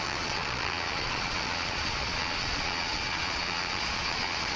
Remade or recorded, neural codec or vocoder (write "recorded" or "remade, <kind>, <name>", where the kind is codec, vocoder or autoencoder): remade, vocoder, Vocos